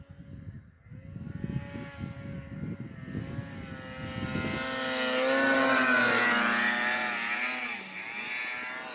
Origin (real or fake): real